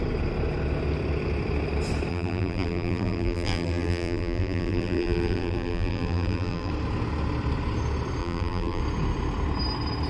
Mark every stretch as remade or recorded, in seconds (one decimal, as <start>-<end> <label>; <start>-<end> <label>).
0.0-2.1 recorded; 2.1-6.7 remade; 6.7-8.2 recorded; 8.2-8.8 remade; 8.8-10.1 recorded

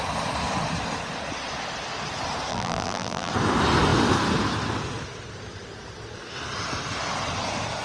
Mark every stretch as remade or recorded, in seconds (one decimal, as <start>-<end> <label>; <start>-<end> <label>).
0.0-2.5 recorded; 2.5-3.3 remade; 3.3-7.8 recorded

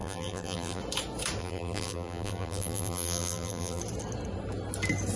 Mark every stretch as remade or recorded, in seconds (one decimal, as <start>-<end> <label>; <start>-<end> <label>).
0.0-0.8 remade; 0.8-1.4 recorded; 1.4-3.8 remade; 3.8-5.2 recorded

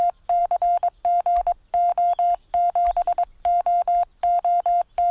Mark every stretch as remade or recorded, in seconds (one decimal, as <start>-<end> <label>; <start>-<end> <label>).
0.0-5.1 recorded

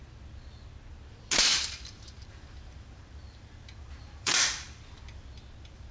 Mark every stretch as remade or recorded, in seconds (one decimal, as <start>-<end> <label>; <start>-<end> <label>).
0.0-1.5 recorded; 1.5-5.0 remade; 5.0-5.9 recorded